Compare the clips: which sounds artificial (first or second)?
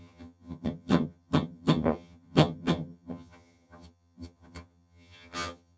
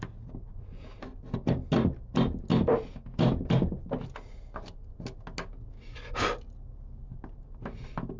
first